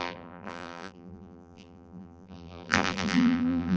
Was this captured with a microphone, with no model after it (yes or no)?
no